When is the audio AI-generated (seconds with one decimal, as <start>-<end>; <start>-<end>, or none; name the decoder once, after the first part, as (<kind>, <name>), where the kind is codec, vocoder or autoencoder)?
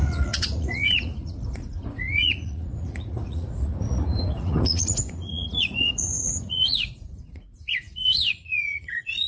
0.0-9.3 (vocoder, Vocos)